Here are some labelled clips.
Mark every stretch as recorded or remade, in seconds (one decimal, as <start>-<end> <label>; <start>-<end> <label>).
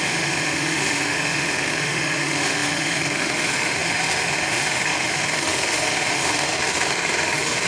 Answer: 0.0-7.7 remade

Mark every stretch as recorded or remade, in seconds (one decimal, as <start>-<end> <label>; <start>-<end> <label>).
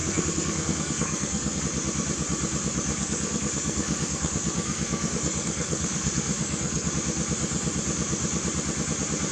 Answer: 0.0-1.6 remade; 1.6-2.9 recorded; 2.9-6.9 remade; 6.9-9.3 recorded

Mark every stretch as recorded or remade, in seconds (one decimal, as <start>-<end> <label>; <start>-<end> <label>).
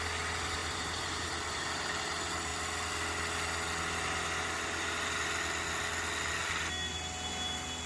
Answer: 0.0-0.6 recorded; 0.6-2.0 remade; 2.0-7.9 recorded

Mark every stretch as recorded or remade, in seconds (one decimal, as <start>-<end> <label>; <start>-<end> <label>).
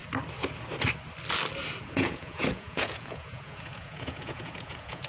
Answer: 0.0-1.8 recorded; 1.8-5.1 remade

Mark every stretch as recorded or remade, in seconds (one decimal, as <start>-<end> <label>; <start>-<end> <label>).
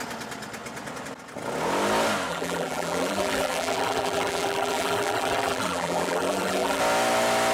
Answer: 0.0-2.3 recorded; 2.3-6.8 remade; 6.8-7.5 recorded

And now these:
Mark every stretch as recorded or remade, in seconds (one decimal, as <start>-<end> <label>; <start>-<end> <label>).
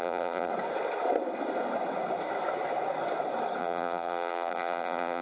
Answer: 0.0-0.5 remade; 0.5-3.6 recorded; 3.6-5.2 remade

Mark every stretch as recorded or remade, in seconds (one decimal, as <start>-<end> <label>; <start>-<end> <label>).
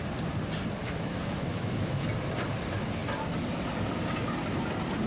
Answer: 0.0-0.8 recorded; 0.8-2.1 remade; 2.1-5.1 recorded